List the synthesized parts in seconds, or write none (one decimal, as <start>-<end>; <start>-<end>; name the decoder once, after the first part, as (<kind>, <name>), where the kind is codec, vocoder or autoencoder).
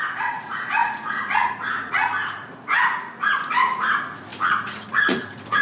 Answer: 0.0-5.6 (vocoder, Vocos)